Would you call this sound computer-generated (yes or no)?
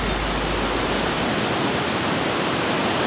no